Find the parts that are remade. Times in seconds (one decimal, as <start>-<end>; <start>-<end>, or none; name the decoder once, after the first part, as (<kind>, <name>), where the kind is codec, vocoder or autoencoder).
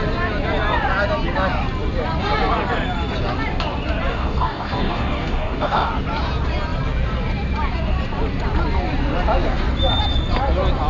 4.1-5.9 (codec, DAC)